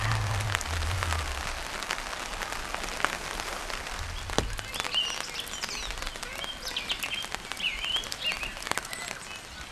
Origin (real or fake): real